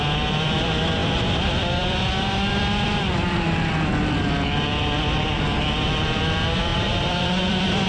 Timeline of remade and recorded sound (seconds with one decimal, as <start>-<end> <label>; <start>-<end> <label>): 0.0-1.0 recorded; 1.0-3.7 remade; 3.7-6.7 recorded; 6.7-7.9 remade

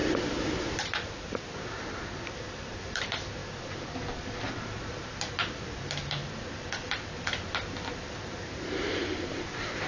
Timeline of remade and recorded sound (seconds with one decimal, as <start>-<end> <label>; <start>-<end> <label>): 0.0-3.4 remade; 3.4-4.5 recorded; 4.5-6.2 remade; 6.2-7.9 recorded; 7.9-9.9 remade